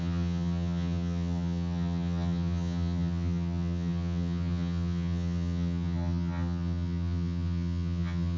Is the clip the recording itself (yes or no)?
no